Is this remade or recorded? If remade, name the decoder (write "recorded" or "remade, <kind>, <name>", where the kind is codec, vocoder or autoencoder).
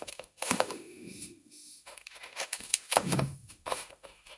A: remade, autoencoder, DAC-VAE